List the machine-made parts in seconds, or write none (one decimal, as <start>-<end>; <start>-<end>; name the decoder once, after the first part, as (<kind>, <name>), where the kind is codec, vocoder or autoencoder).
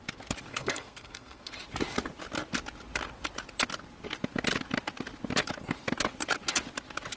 0.5-1.5 (codec, SNAC)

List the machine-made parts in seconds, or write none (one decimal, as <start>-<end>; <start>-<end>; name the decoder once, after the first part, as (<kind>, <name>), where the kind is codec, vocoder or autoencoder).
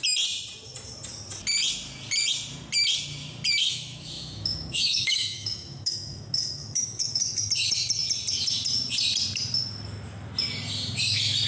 3.6-7.4 (autoencoder, DAC-VAE)